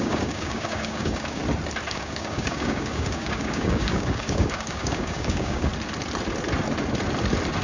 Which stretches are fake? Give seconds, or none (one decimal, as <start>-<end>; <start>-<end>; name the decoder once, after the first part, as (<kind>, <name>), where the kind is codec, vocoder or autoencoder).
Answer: 0.0-1.4 (codec, DAC); 1.9-5.7